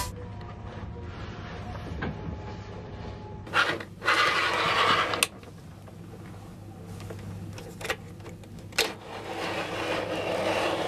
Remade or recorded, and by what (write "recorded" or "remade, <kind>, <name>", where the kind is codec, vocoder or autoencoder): recorded